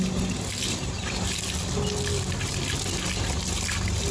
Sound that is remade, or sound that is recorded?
recorded